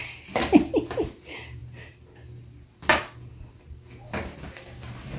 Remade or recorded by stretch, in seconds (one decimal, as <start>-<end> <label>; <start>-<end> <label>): 0.0-5.2 recorded